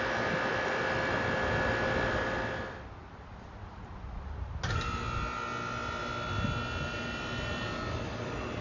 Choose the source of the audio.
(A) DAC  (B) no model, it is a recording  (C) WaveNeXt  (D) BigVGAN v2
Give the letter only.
B